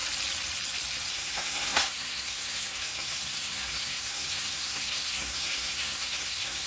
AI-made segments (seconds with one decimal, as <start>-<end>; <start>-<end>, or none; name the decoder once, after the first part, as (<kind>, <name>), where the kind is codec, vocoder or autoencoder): 1.1-6.7 (codec, SNAC)